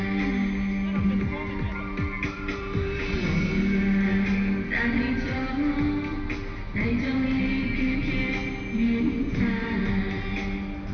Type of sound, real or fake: real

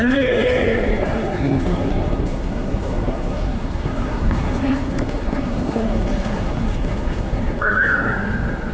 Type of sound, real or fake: fake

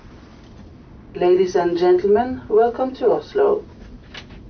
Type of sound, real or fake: real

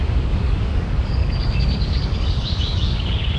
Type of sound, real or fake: fake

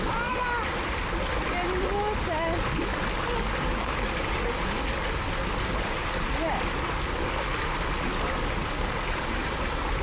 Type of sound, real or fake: real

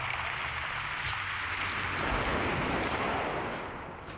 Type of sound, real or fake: real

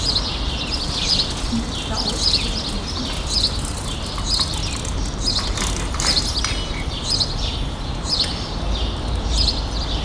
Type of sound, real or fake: real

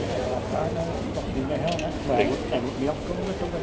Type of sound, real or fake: real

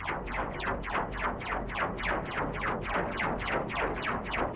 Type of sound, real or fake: real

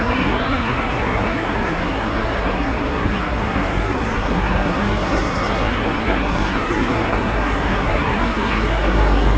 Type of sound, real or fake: fake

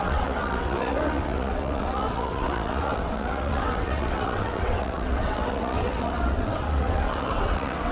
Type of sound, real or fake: fake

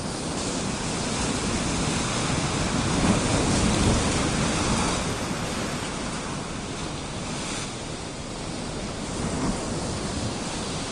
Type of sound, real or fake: real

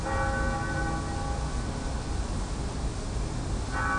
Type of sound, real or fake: real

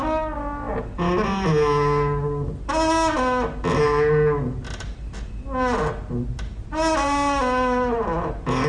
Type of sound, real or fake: real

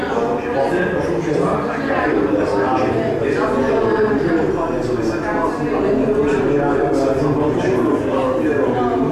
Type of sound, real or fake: real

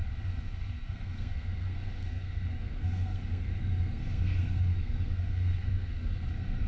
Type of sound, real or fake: fake